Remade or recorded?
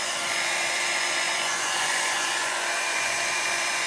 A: remade